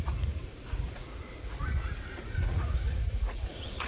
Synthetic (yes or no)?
yes